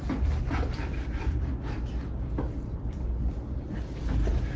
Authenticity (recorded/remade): recorded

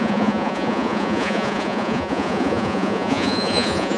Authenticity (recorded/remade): remade